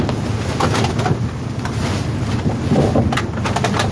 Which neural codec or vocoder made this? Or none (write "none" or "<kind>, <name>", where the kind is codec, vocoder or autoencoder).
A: none